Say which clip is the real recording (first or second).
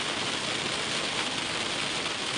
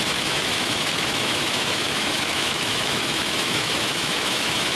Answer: first